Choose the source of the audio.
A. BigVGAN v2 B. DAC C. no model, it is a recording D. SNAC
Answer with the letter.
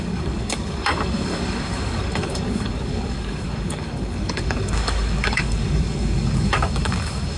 B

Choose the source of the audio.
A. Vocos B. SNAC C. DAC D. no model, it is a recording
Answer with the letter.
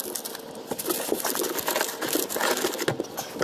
D